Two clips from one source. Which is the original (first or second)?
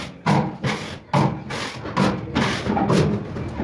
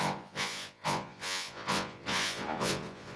first